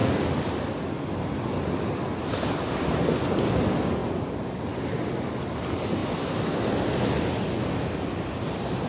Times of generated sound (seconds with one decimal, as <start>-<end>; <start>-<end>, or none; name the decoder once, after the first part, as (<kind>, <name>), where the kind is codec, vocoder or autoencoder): 4.0-5.3 (vocoder, BigVGAN v2)